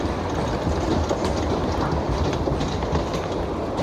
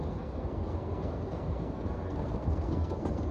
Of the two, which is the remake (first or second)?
second